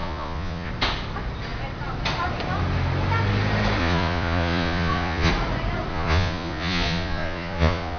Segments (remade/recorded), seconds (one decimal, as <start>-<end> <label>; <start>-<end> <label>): 0.0-0.7 remade; 0.7-3.8 recorded; 3.8-5.3 remade; 5.3-5.9 recorded; 5.9-8.0 remade